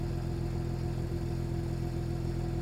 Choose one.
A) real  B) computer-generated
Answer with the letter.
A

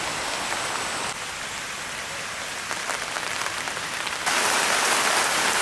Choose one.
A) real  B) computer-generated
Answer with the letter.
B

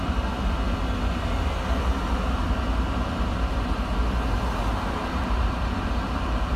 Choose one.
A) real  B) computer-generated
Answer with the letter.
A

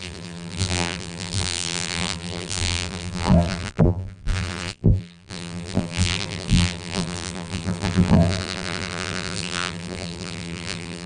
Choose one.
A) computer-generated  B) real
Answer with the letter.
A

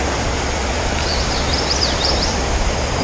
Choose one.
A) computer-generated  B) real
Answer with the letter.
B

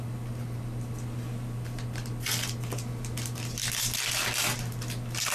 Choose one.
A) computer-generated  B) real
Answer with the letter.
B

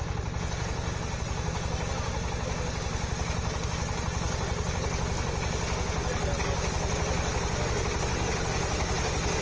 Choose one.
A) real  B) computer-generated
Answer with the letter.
A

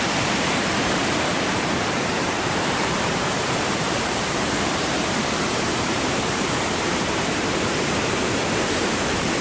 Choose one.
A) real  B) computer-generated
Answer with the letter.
B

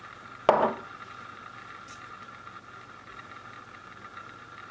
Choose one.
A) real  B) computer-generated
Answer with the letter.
A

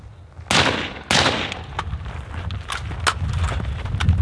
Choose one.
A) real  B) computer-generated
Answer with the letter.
A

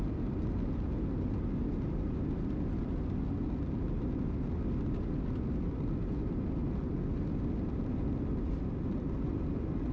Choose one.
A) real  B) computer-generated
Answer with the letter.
A